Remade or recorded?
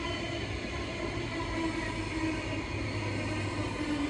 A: recorded